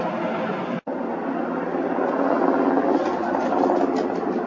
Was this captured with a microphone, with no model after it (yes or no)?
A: yes